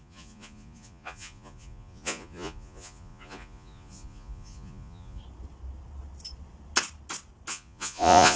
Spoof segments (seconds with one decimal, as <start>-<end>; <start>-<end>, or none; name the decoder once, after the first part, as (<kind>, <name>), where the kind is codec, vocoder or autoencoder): 0.0-5.2 (vocoder, Vocos); 7.5-8.4